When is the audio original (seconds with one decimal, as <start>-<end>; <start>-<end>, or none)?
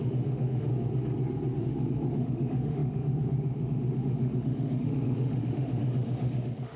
0.7-1.6